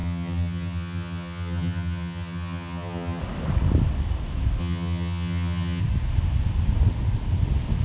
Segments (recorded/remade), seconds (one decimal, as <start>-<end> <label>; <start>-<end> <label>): 0.0-3.2 remade; 3.2-4.6 recorded; 4.6-5.8 remade; 5.8-7.8 recorded